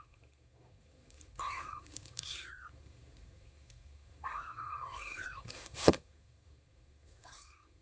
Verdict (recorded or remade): remade